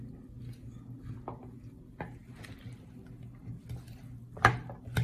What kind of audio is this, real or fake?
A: real